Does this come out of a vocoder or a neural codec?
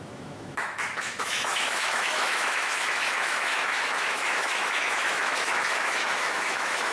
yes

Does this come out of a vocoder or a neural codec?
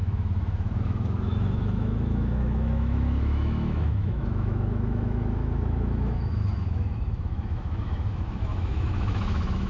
yes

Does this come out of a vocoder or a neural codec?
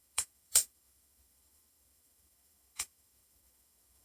yes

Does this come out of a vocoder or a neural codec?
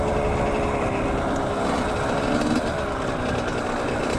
no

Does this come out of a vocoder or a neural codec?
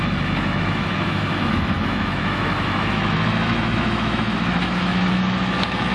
yes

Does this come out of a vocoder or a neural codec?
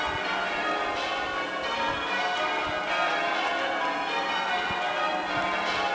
no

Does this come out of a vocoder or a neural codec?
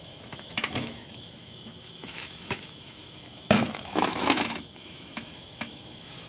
yes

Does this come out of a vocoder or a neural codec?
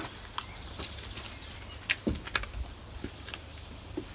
no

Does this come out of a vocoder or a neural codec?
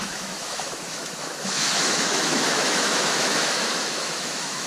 yes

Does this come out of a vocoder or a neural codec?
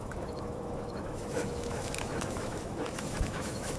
yes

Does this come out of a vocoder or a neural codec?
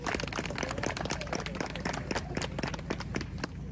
no